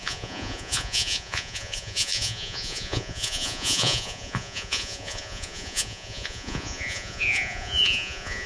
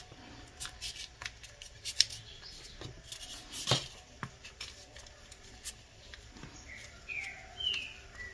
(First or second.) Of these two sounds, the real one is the second